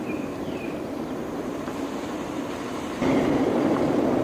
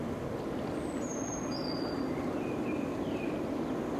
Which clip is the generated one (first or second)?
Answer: first